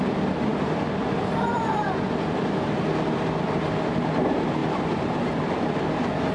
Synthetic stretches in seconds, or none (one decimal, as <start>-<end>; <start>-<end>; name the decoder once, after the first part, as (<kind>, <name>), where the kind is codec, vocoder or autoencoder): 0.0-6.3 (vocoder, BigVGAN v2)